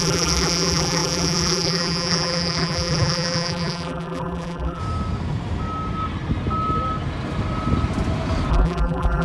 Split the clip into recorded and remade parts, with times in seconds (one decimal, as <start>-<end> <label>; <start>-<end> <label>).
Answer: 0.0-4.8 remade; 4.8-8.5 recorded; 8.5-9.2 remade